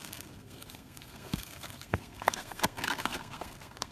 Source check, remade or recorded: remade